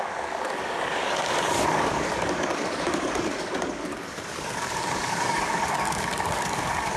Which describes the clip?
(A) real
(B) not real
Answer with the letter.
B